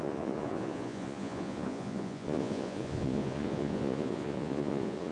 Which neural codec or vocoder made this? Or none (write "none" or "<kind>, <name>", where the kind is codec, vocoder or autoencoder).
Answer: vocoder, Vocos